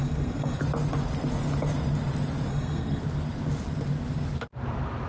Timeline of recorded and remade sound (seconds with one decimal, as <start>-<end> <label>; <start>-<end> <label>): 0.0-0.6 remade; 0.6-2.5 recorded; 2.5-3.0 remade; 3.0-5.1 recorded